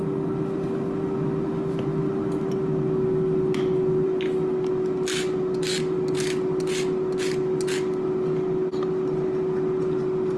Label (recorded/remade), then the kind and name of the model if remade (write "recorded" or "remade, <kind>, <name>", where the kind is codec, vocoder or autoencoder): recorded